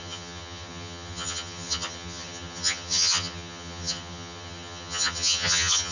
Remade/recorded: remade